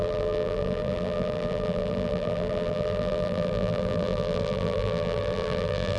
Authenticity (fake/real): fake